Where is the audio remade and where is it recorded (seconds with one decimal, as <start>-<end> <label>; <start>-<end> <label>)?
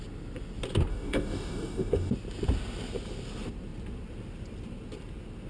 0.0-0.9 recorded; 0.9-2.1 remade; 2.1-5.5 recorded